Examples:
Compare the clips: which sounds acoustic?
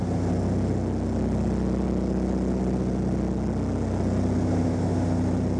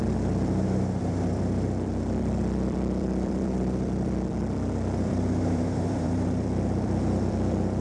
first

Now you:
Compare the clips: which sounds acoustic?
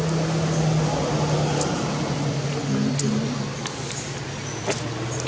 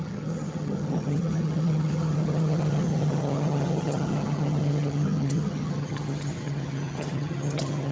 first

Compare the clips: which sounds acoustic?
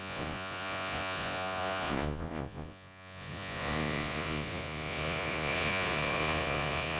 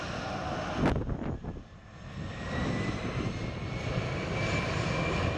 second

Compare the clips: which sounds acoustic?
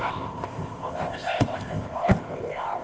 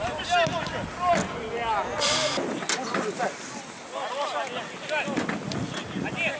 second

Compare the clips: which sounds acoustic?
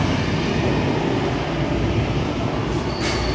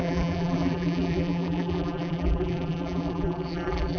first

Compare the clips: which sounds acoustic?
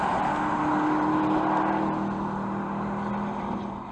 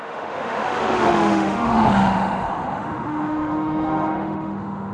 first